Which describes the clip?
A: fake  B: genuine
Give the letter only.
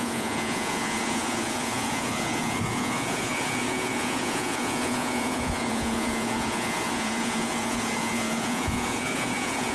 A